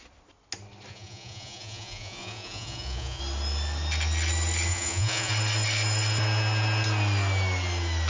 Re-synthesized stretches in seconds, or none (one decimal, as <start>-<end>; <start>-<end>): 0.9-3.2; 4.7-5.3